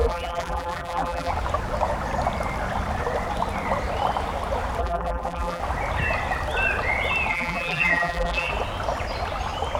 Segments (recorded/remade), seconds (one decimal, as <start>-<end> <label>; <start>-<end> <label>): 0.0-1.3 remade; 1.3-4.8 recorded; 4.8-5.6 remade; 5.6-7.3 recorded; 7.3-8.5 remade; 8.5-9.8 recorded